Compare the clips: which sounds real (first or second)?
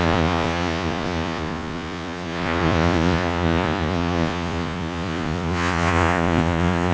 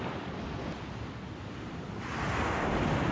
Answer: second